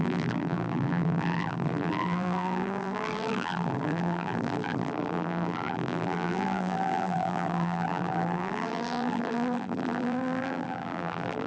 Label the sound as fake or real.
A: fake